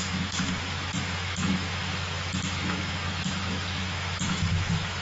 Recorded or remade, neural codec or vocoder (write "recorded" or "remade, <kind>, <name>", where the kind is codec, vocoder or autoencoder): remade, autoencoder, DAC-VAE